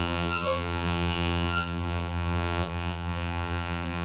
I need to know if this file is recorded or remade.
remade